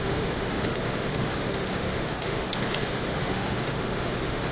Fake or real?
fake